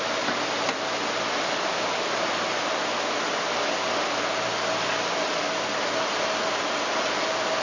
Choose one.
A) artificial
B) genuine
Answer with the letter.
B